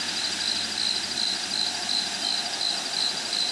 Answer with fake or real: real